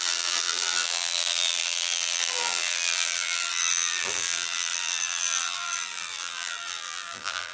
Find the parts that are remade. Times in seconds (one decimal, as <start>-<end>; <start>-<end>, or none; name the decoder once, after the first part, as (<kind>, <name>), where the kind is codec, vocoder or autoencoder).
0.0-7.5 (vocoder, BigVGAN v2)